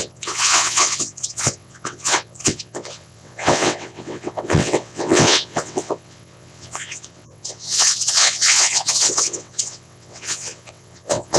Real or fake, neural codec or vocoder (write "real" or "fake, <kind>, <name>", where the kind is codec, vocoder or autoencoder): fake, vocoder, WaveNeXt